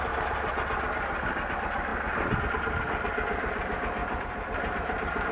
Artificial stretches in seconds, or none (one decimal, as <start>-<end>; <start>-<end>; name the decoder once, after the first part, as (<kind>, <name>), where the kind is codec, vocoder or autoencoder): 4.0-5.3 (vocoder, BigVGAN v2)